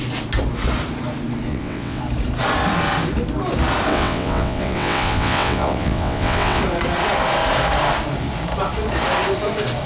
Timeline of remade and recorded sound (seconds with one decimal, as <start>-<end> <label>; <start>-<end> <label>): 0.0-1.5 recorded; 1.5-2.0 remade; 2.0-3.9 recorded; 3.9-6.6 remade; 6.6-9.9 recorded